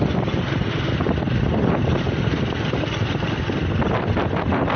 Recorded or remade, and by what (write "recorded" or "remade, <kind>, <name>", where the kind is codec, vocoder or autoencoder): recorded